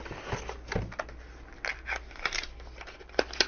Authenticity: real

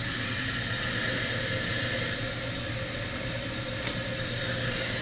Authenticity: real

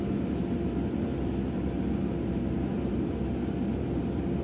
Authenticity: real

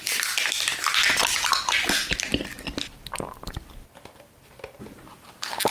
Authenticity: real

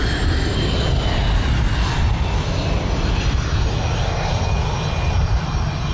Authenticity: real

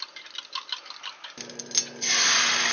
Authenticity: real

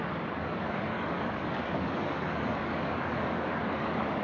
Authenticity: fake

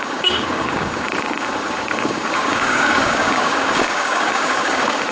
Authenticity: fake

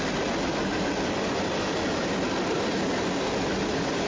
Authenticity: real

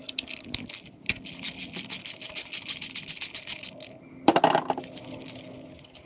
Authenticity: real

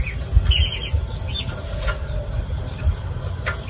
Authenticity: real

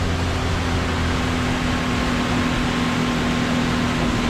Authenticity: real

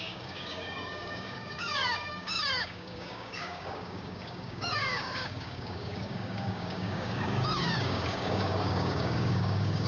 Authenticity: fake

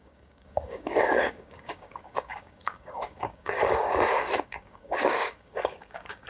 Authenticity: fake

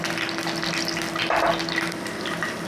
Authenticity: real